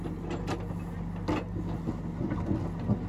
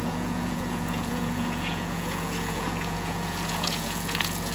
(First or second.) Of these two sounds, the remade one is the second